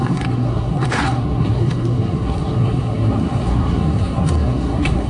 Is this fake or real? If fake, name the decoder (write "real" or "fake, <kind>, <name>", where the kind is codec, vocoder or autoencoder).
fake, codec, SNAC